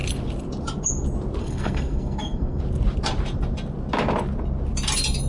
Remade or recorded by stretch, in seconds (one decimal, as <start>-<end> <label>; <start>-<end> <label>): 0.0-1.4 recorded; 1.4-2.6 remade; 2.6-5.3 recorded